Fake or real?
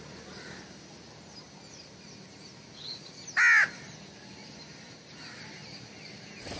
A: real